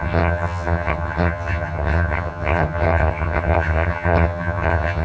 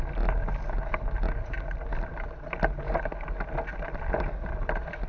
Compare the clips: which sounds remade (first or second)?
first